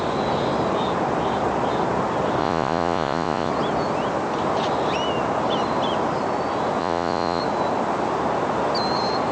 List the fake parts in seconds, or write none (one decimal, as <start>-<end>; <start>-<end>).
2.4-3.5; 6.8-7.4